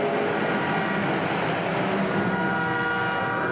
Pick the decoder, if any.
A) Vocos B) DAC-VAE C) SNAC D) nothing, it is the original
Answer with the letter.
D